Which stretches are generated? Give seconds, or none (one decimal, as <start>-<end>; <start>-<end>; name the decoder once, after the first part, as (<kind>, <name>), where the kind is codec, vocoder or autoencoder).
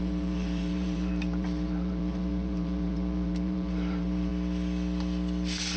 0.0-4.3 (vocoder, BigVGAN v2)